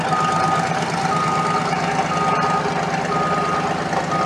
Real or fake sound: real